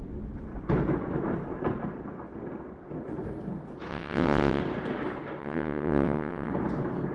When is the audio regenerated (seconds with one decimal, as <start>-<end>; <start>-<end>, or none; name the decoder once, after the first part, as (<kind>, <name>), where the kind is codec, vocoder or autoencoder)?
3.9-4.6 (vocoder, WaveNeXt); 5.4-6.5